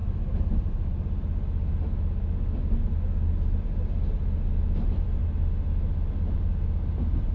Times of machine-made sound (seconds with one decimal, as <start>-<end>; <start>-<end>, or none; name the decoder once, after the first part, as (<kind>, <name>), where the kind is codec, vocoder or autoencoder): none